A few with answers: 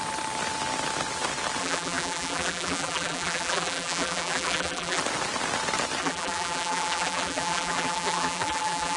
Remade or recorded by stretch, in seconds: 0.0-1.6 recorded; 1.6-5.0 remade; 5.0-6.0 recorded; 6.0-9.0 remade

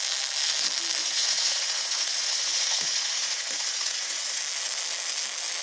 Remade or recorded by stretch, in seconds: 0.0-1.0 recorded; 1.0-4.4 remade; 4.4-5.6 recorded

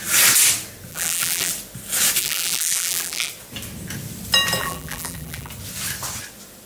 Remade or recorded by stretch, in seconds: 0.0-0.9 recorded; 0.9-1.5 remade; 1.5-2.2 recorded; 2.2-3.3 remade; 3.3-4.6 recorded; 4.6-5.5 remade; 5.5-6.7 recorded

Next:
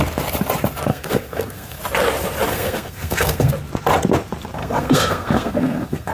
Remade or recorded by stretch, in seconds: 0.0-0.9 recorded; 0.9-1.8 remade; 1.8-2.5 recorded; 2.5-3.5 remade; 3.5-4.6 recorded; 4.6-6.1 remade

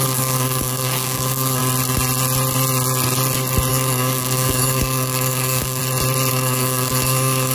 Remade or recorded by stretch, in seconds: 0.0-1.6 remade; 1.6-3.7 recorded; 3.7-5.8 remade; 5.8-6.3 recorded; 6.3-7.5 remade